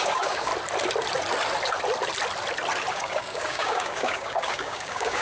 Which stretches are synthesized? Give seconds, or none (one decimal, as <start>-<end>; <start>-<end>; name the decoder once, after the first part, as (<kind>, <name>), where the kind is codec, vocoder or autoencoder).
0.0-0.5 (codec, DAC); 2.9-5.2